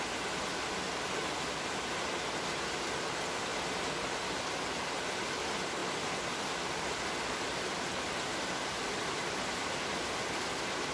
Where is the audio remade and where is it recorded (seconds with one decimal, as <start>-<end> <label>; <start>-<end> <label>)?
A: 0.0-10.9 recorded